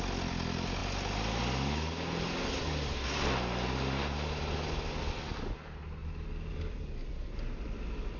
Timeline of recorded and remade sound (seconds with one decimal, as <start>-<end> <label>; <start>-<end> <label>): 0.0-8.2 recorded